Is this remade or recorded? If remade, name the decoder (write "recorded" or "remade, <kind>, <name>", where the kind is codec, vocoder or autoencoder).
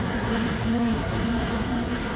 remade, codec, SNAC